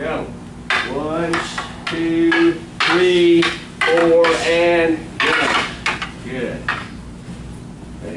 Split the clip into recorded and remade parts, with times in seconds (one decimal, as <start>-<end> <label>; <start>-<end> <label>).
0.0-6.7 recorded; 6.7-7.3 remade; 7.3-8.2 recorded